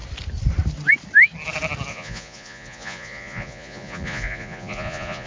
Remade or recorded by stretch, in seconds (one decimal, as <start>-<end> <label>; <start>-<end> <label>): 0.0-1.9 recorded; 1.9-5.3 remade